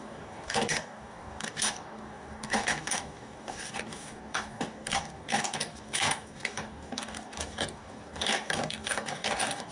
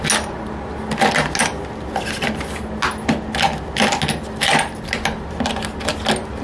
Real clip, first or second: second